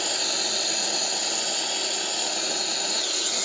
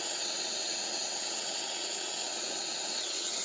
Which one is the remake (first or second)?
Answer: second